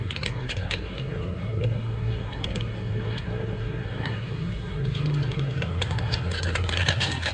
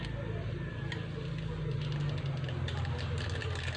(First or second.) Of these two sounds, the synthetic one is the first